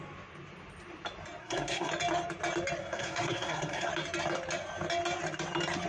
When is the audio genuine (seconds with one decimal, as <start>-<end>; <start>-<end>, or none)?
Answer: 0.0-1.4; 1.9-2.8; 3.9-5.9